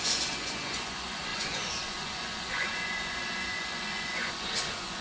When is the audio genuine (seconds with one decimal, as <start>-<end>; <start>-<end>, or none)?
none